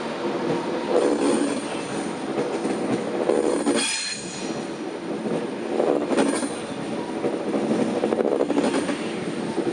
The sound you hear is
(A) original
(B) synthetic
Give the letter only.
A